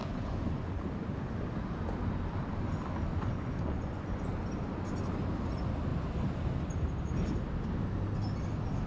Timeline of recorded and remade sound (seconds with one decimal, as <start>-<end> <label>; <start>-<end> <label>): 0.0-0.7 remade; 0.7-3.1 recorded; 3.1-4.3 remade; 4.3-8.9 recorded